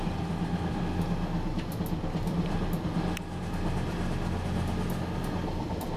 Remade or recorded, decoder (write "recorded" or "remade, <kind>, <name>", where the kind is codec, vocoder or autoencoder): recorded